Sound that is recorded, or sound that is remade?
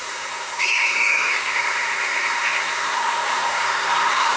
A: remade